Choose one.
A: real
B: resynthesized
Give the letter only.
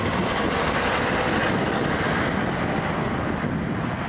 A